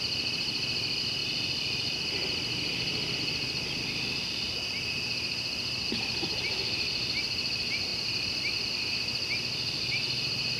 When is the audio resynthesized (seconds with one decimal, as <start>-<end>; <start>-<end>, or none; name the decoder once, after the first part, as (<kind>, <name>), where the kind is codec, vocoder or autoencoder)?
none